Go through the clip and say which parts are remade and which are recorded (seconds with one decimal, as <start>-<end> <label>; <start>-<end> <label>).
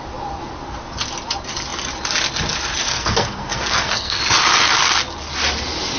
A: 0.0-2.9 recorded; 2.9-4.2 remade; 4.2-6.0 recorded